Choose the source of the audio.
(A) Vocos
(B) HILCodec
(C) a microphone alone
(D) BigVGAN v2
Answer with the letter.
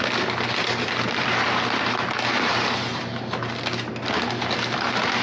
C